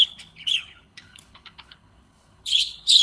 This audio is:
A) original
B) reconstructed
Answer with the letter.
B